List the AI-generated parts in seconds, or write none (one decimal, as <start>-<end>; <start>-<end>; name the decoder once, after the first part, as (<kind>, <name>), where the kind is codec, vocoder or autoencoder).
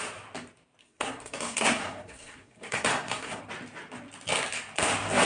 0.8-3.4 (codec, SNAC)